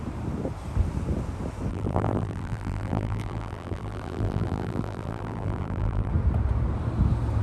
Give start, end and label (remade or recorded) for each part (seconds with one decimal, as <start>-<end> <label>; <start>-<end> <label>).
0.0-1.7 recorded; 1.7-6.1 remade; 6.1-7.4 recorded